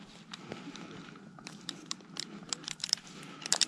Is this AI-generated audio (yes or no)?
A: yes